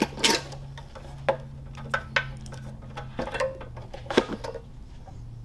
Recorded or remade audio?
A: recorded